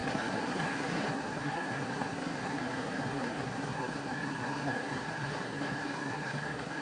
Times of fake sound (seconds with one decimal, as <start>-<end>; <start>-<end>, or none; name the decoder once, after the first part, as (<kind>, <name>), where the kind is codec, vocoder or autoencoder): 0.0-6.8 (codec, SNAC)